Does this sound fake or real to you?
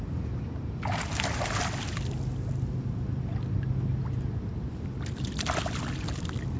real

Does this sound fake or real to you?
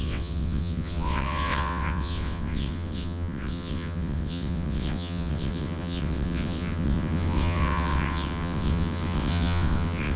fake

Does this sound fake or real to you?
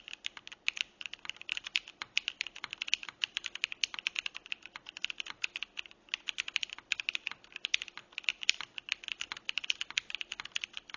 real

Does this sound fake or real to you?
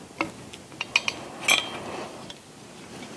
real